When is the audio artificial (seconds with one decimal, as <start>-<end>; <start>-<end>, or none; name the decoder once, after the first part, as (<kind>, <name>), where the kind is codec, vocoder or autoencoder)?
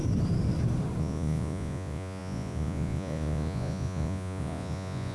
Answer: 1.0-5.1 (vocoder, Vocos)